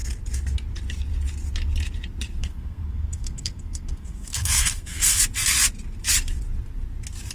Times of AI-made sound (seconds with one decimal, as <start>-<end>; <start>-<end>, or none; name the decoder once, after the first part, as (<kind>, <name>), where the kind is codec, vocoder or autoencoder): 2.4-5.2 (codec, SNAC)